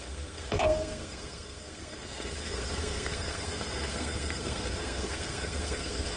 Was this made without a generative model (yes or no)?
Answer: no